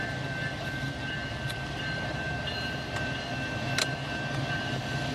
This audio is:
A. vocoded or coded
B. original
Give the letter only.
A